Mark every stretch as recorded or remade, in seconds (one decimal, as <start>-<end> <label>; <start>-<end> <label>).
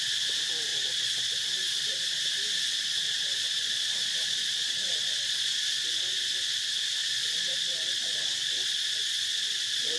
0.0-0.7 recorded; 0.7-2.2 remade; 2.2-2.9 recorded; 2.9-6.2 remade; 6.2-7.0 recorded; 7.0-10.0 remade